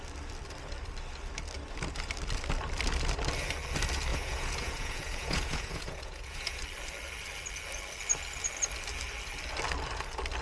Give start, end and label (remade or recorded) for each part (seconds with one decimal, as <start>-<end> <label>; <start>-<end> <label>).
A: 0.0-4.1 recorded; 4.1-6.6 remade; 6.6-10.4 recorded